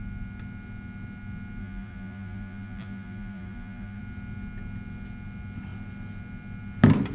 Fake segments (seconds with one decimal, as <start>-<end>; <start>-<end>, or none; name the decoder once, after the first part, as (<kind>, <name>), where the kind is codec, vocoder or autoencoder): 1.6-4.0 (vocoder, BigVGAN v2)